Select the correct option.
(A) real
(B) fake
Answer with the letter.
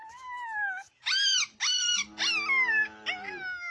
A